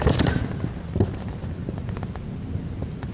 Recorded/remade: recorded